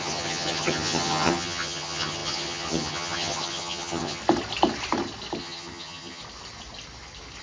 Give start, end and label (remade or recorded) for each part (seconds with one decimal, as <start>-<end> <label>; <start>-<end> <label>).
0.0-4.2 remade; 4.2-5.4 recorded; 5.4-6.2 remade; 6.2-7.4 recorded